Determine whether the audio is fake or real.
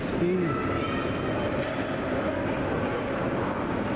real